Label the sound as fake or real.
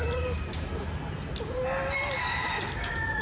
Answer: real